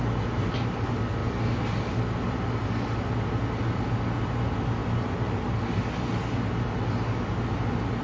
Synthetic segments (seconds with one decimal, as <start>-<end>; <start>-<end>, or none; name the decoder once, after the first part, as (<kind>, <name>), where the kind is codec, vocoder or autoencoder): none